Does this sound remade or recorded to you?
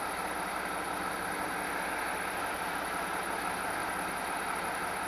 recorded